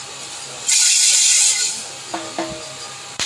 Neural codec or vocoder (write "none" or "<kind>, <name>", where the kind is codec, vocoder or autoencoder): none